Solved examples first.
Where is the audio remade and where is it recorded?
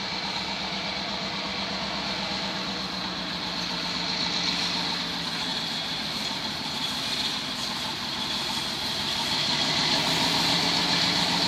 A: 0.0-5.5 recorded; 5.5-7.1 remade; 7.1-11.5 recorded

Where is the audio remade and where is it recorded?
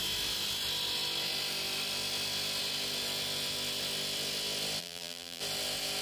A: 0.0-4.8 recorded; 4.8-5.4 remade; 5.4-6.0 recorded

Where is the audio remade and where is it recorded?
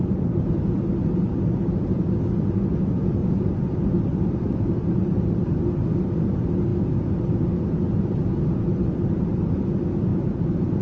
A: 0.0-3.2 recorded; 3.2-4.9 remade; 4.9-10.1 recorded; 10.1-10.8 remade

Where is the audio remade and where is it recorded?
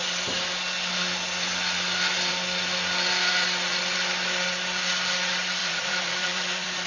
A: 0.0-5.6 recorded; 5.6-6.9 remade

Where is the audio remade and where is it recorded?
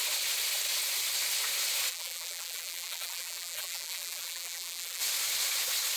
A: 0.0-1.9 recorded; 1.9-5.0 remade; 5.0-6.0 recorded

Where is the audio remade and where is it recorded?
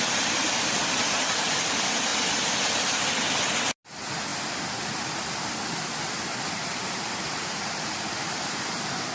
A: 0.0-9.1 recorded